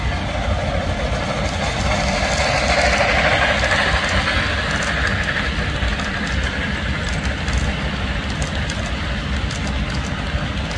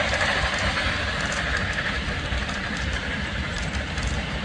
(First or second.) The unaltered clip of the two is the first